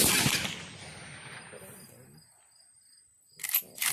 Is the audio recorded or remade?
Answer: recorded